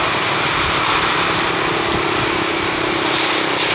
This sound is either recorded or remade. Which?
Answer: recorded